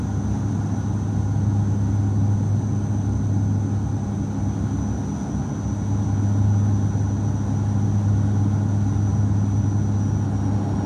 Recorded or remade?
recorded